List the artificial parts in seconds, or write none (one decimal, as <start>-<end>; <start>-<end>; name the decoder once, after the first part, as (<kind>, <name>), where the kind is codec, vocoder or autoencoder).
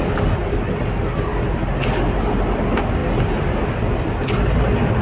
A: none